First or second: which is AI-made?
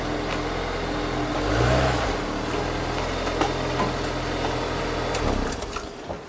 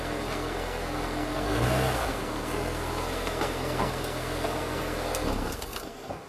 second